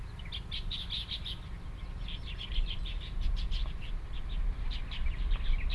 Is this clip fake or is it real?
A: real